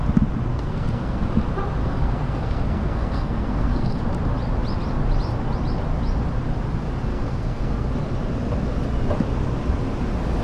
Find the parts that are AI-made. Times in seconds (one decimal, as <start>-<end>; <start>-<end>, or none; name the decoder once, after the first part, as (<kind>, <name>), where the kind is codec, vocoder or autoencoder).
0.5-1.3 (codec, SNAC); 1.8-4.0; 7.1-7.9